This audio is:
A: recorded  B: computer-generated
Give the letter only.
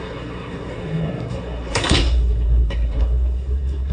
B